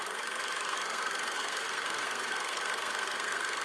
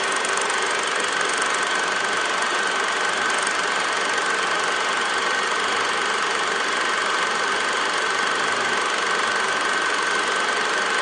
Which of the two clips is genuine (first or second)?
second